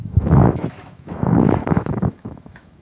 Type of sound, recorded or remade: remade